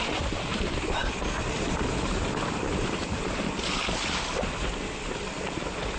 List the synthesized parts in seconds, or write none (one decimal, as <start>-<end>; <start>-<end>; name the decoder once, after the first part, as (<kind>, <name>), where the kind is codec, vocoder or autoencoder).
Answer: none